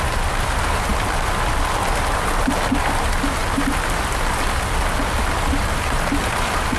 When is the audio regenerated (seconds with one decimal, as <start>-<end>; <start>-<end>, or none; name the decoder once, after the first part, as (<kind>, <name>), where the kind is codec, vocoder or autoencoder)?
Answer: none